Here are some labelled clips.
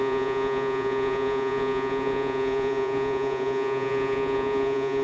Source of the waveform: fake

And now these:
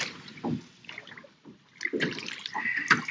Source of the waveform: real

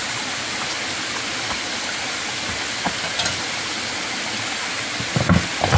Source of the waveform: real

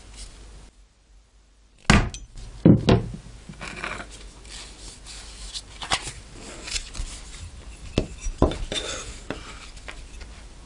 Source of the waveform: real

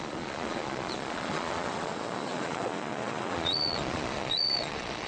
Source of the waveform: fake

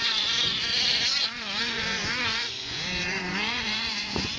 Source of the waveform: fake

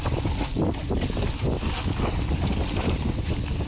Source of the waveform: real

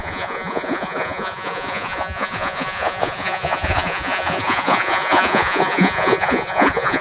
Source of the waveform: fake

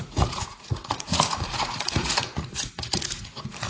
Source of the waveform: fake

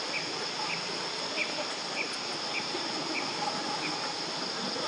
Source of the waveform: real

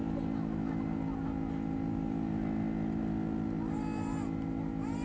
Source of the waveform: real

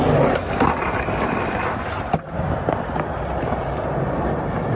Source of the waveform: real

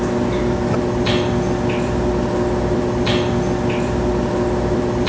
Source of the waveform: real